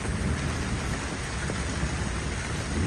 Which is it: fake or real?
real